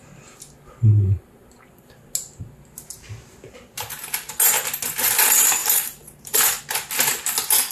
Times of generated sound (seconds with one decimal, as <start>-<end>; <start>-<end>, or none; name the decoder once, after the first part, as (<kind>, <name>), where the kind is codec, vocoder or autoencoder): 5.6-6.6 (vocoder, BigVGAN v2)